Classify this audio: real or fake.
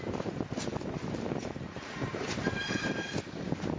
fake